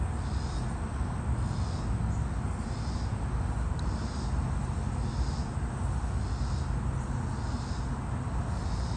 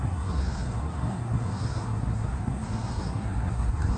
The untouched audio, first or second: first